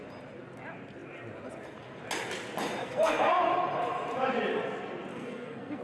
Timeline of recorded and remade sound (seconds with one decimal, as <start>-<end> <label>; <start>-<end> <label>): 0.0-2.8 recorded; 2.8-3.5 remade; 3.5-5.1 recorded; 5.1-5.8 remade